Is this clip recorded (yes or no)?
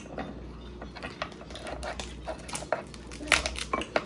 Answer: yes